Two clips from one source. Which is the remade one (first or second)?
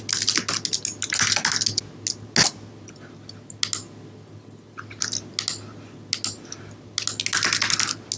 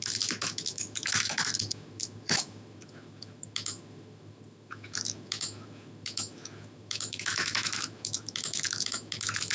second